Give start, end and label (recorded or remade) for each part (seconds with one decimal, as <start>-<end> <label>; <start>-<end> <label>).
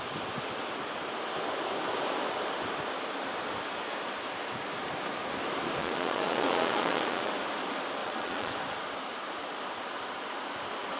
0.0-5.8 recorded; 5.8-7.3 remade; 7.3-8.0 recorded; 8.0-8.5 remade; 8.5-11.0 recorded